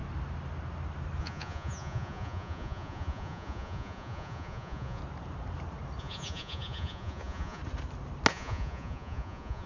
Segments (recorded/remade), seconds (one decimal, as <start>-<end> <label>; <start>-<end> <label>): 0.0-1.2 recorded; 1.2-5.0 remade; 5.0-6.0 recorded; 6.0-7.6 remade; 7.6-8.3 recorded; 8.3-9.7 remade